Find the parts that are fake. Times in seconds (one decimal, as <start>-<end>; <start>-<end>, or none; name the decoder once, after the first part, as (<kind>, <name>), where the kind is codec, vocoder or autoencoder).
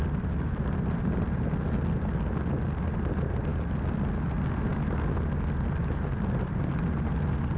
none